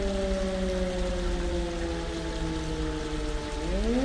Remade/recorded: recorded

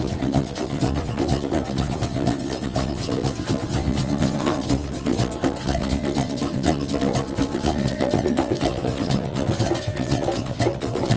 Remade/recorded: remade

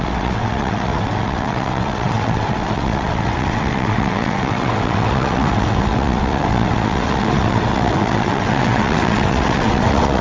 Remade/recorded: remade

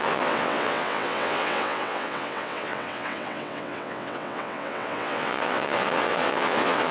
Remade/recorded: remade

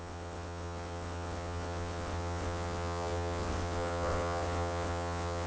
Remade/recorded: remade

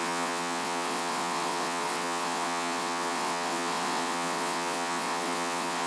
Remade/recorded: remade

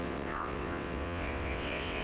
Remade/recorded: remade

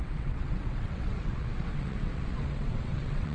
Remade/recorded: remade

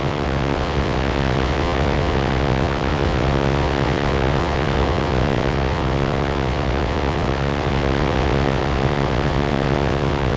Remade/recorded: remade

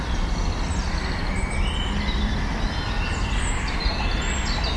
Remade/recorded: recorded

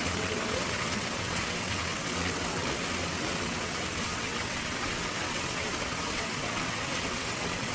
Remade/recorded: remade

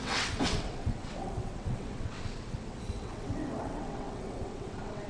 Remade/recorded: remade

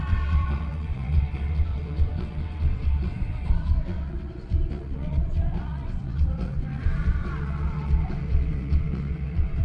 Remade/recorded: remade